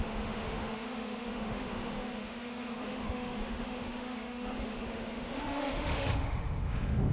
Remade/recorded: remade